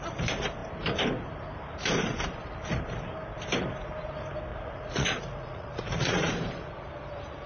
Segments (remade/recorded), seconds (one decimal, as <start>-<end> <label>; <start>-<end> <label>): 0.0-4.5 recorded; 4.5-6.3 remade; 6.3-7.5 recorded